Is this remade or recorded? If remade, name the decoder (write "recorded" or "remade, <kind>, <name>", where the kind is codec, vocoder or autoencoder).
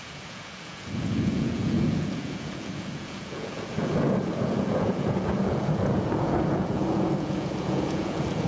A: remade, vocoder, Vocos